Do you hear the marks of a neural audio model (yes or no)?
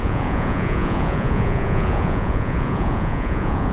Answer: yes